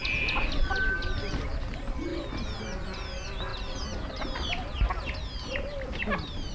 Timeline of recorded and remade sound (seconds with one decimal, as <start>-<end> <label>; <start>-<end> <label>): 0.0-0.7 remade; 0.7-2.1 recorded; 2.1-2.6 remade; 2.6-3.5 recorded; 3.5-4.1 remade; 4.1-6.5 recorded